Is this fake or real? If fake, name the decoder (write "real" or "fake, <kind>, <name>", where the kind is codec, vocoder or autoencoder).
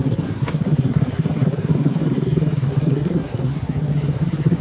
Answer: fake, codec, SNAC